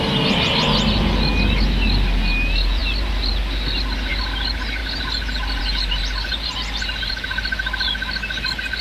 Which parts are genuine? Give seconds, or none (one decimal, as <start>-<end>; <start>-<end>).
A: 0.0-8.8